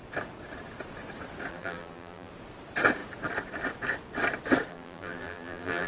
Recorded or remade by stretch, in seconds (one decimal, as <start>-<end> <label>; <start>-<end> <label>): 0.0-1.5 recorded; 1.5-2.3 remade; 2.3-4.7 recorded; 4.7-5.9 remade